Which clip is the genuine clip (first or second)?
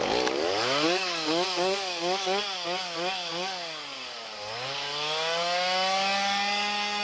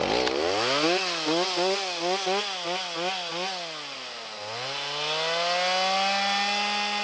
second